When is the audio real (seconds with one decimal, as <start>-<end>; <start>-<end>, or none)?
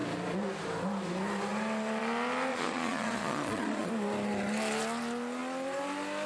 0.0-2.5; 3.9-6.3